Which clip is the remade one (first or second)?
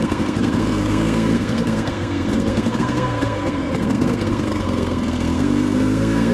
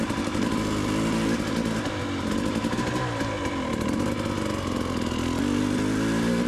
first